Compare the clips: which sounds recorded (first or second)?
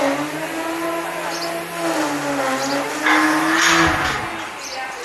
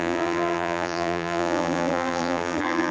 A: first